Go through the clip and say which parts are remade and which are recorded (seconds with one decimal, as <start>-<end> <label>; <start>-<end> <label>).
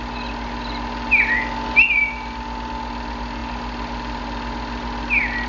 0.0-5.5 recorded